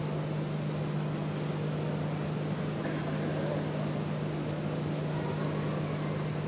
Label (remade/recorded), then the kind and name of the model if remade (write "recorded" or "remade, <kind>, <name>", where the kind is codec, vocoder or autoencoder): recorded